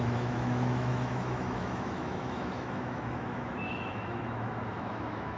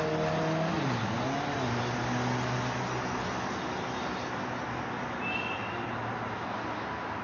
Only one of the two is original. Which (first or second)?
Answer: second